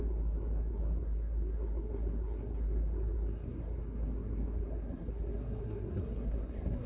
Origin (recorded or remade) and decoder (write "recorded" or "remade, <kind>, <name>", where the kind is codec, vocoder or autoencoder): remade, codec, SNAC